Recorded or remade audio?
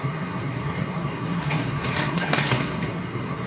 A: remade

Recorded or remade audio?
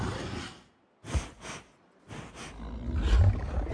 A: recorded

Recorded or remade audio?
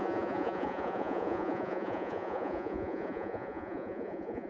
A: remade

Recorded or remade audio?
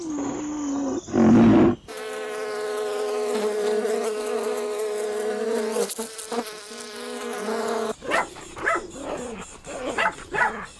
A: recorded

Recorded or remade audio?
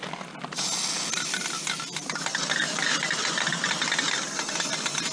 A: recorded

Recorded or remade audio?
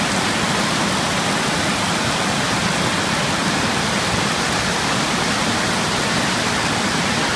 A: recorded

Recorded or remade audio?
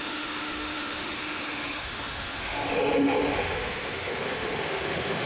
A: remade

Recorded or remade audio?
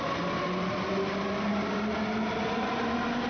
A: recorded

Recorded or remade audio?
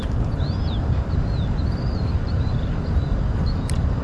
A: remade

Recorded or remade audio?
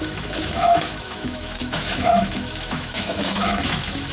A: remade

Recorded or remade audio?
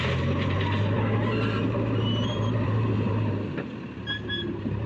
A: remade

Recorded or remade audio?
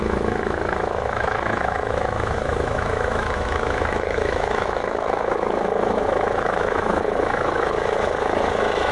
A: remade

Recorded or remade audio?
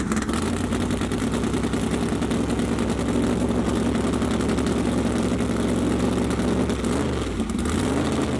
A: recorded